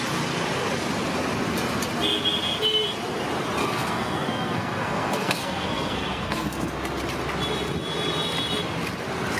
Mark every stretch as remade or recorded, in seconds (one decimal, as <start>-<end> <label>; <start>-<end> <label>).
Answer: 0.0-3.6 recorded; 3.6-6.7 remade; 6.7-9.4 recorded